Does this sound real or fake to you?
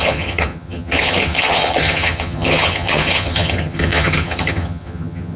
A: fake